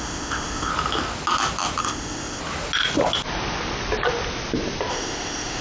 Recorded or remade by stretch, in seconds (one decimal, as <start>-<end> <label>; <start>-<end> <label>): 0.0-0.7 remade; 0.7-1.8 recorded; 1.8-2.4 remade; 2.4-4.9 recorded; 4.9-5.6 remade